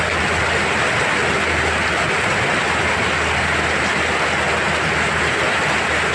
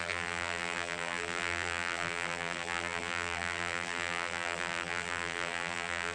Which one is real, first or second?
first